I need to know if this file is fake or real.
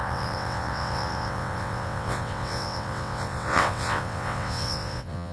fake